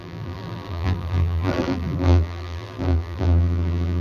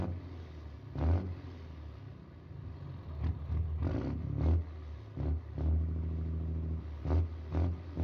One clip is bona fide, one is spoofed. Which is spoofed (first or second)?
first